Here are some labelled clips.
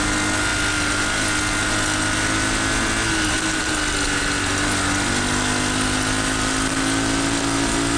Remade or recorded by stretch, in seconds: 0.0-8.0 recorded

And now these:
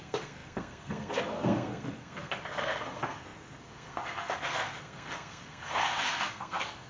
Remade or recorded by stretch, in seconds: 0.0-6.9 remade

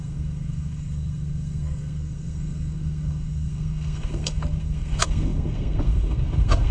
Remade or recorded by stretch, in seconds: 0.0-6.7 remade

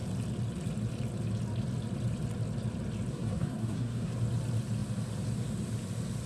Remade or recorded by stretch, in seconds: 0.0-3.1 recorded; 3.1-4.1 remade; 4.1-6.3 recorded

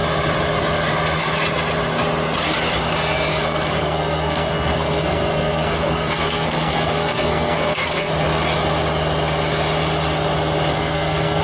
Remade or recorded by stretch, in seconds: 0.0-3.3 recorded; 3.3-8.1 remade; 8.1-10.7 recorded; 10.7-11.4 remade

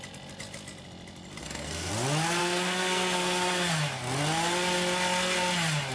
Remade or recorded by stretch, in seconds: 0.0-1.4 recorded; 1.4-1.9 remade; 1.9-2.4 recorded; 2.4-3.7 remade; 3.7-5.9 recorded

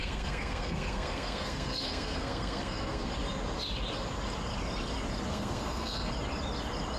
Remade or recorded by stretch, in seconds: 0.0-3.1 remade; 3.1-5.3 recorded; 5.3-6.1 remade; 6.1-7.0 recorded